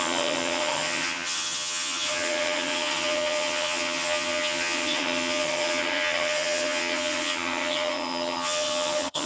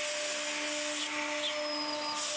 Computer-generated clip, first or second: first